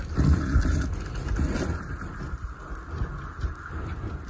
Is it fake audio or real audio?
real